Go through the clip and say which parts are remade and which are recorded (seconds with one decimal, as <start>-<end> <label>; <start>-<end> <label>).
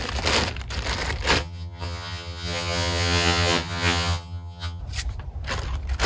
0.0-1.4 recorded; 1.4-4.8 remade; 4.8-6.1 recorded